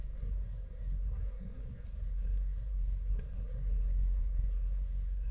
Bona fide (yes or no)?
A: no